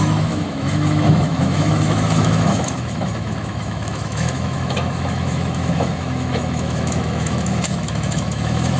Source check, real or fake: fake